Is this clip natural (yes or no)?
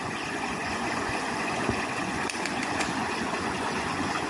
no